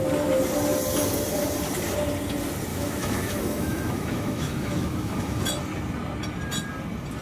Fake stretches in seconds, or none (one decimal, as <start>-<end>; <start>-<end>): 2.7-5.4

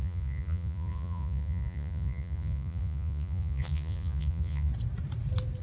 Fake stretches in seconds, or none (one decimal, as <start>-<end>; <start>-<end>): 0.0-4.7

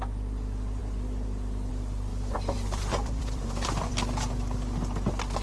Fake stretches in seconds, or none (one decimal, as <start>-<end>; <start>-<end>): 2.1-3.9

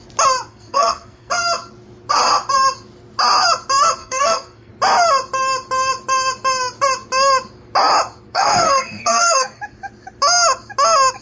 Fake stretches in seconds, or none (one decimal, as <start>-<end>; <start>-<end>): 0.5-1.3; 4.0-4.7; 8.3-9.6